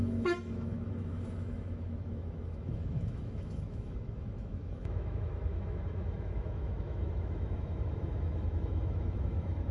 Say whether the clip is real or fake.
fake